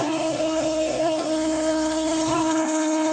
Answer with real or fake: fake